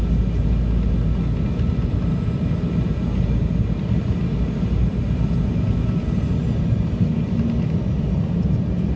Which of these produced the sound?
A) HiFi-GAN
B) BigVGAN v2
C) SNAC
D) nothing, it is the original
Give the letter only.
D